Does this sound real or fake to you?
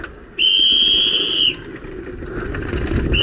real